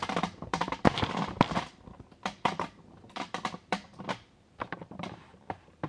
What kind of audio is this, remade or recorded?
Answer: remade